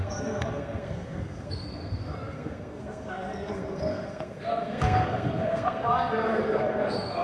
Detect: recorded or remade remade